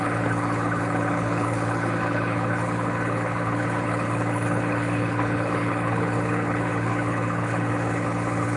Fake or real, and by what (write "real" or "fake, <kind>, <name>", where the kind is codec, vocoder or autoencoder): fake, codec, HILCodec